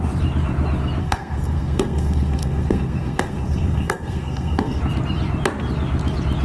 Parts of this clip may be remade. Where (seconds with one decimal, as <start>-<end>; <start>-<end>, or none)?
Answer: 1.0-4.8